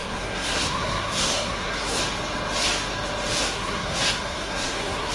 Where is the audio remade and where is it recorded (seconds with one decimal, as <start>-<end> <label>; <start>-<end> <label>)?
0.0-2.0 remade; 2.0-3.4 recorded; 3.4-5.1 remade